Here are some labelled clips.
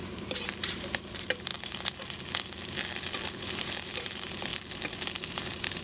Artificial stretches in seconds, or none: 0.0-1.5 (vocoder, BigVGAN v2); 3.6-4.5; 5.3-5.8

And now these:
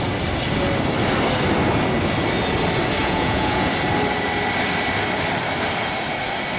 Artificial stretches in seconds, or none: 3.0-3.7 (vocoder, Vocos)

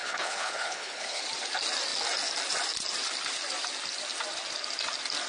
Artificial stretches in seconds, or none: 0.0-1.2 (codec, HILCodec)